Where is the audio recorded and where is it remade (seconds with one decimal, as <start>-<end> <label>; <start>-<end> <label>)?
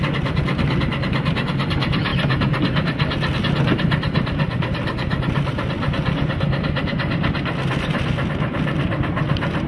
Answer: 0.0-9.7 recorded